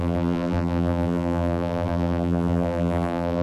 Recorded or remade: remade